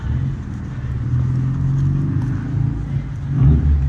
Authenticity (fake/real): real